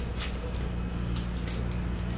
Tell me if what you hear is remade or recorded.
recorded